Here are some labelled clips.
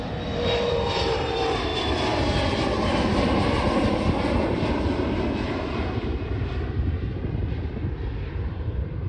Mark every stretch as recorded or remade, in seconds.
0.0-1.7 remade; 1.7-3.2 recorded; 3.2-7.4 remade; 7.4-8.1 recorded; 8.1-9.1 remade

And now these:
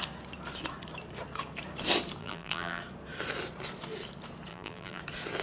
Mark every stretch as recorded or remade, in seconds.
0.0-2.2 recorded; 2.2-2.8 remade; 2.8-4.5 recorded; 4.5-5.0 remade; 5.0-5.4 recorded

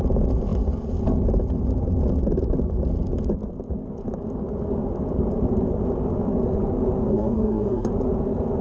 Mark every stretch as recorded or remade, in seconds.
0.0-7.1 recorded; 7.1-7.9 remade; 7.9-8.6 recorded